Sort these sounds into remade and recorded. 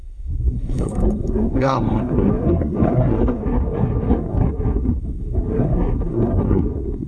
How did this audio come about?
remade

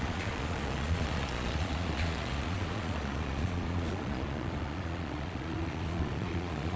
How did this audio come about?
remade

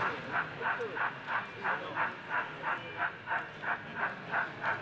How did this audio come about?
recorded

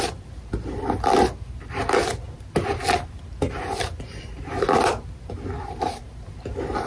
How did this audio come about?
recorded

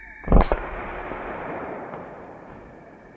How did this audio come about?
remade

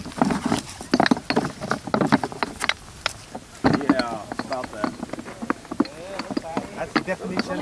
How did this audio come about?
recorded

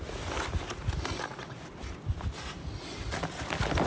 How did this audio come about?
recorded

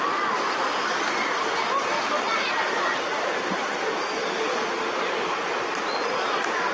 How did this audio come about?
recorded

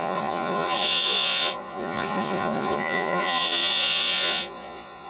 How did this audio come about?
remade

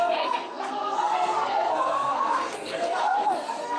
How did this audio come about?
remade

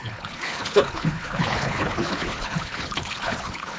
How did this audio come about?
remade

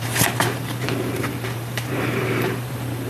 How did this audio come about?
remade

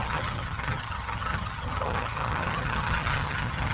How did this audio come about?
remade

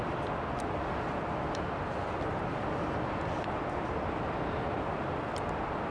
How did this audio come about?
recorded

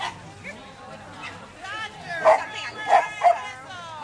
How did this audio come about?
recorded